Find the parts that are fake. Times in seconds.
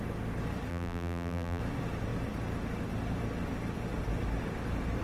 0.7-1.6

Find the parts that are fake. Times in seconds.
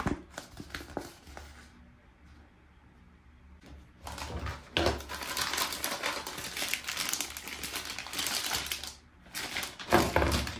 none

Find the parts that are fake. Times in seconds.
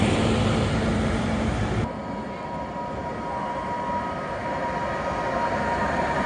0.0-2.0; 5.8-6.3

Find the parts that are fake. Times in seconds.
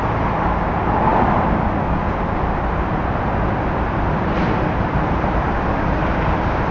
none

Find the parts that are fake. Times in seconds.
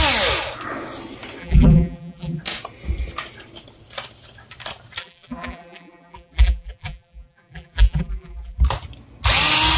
1.4-2.4; 5.0-8.6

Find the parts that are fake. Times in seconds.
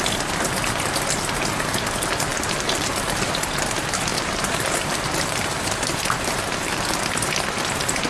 2.3-2.9; 4.1-7.0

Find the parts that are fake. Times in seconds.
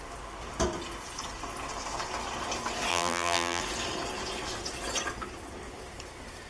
2.9-3.6